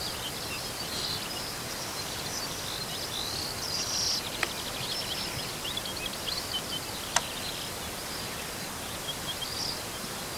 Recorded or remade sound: recorded